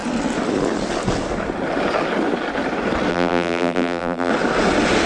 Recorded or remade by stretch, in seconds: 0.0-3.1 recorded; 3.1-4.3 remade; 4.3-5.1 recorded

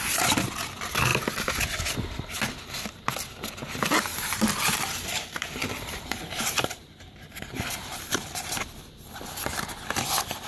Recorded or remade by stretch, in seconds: 0.0-4.1 recorded; 4.1-8.6 remade; 8.6-10.5 recorded

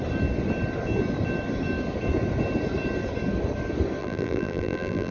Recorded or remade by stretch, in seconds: 0.0-4.0 recorded; 4.0-5.1 remade

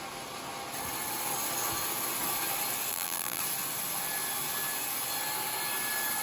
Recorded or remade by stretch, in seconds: 0.0-2.9 recorded; 2.9-3.4 remade; 3.4-6.2 recorded

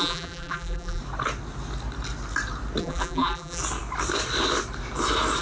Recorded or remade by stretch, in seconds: 0.0-1.0 remade; 1.0-2.8 recorded; 2.8-3.6 remade; 3.6-5.4 recorded

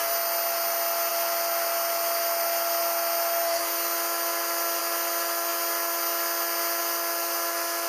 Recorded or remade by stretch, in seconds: 0.0-7.9 recorded

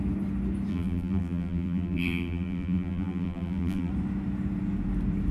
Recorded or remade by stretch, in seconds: 0.0-0.7 recorded; 0.7-3.9 remade; 3.9-5.3 recorded